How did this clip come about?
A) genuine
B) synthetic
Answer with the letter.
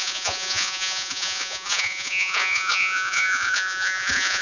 B